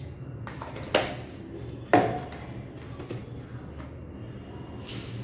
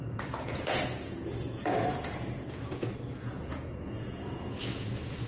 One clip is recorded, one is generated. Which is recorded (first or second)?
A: first